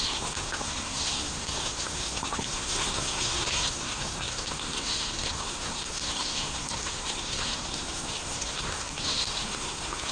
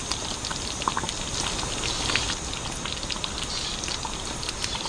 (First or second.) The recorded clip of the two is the second